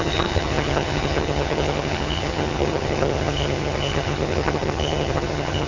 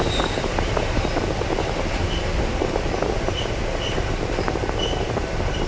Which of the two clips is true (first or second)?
second